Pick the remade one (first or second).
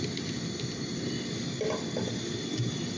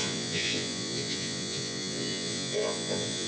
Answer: second